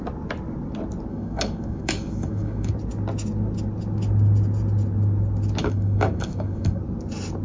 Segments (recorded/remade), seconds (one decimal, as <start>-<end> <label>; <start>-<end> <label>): 0.0-1.1 recorded; 1.1-2.7 remade; 2.7-5.6 recorded; 5.6-6.8 remade; 6.8-7.4 recorded